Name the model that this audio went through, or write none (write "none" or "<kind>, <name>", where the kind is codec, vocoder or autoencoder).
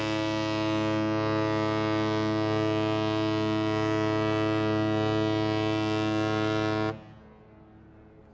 none